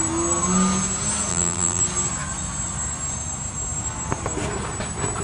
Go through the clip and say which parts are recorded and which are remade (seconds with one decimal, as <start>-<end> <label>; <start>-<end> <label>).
0.0-1.3 recorded; 1.3-1.8 remade; 1.8-5.2 recorded